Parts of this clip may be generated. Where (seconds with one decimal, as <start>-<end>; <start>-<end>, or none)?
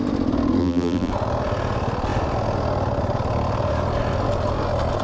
0.6-1.1